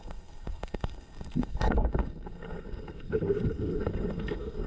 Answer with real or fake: fake